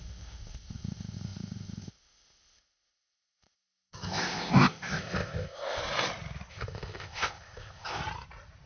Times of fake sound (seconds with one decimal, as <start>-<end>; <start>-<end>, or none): 0.0-5.8; 6.5-8.0